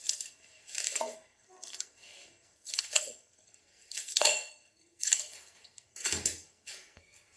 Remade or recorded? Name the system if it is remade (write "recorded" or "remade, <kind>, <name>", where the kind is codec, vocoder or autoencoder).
remade, codec, SNAC